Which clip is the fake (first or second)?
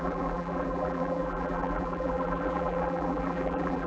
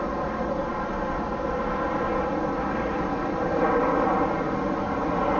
first